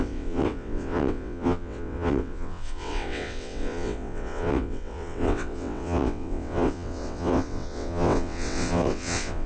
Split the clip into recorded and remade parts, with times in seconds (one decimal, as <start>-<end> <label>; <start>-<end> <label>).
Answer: 0.0-9.5 remade